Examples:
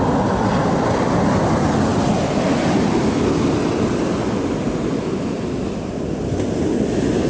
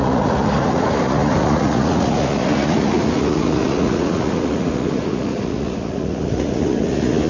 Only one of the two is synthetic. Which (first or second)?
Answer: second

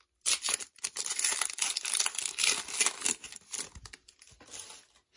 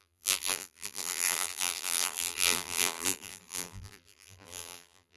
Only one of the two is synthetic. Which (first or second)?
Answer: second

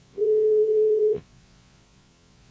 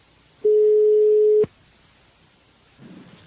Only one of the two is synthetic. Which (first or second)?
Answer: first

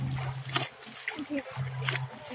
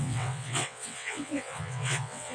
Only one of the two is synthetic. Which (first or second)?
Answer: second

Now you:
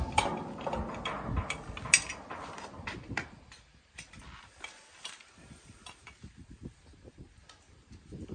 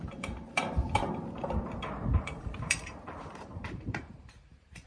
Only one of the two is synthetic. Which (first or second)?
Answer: second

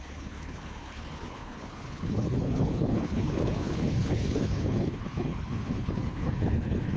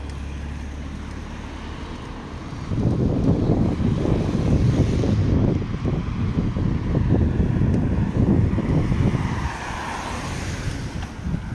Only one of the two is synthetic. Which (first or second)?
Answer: first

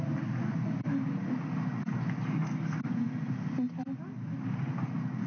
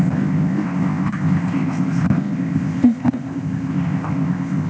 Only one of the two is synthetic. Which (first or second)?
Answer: second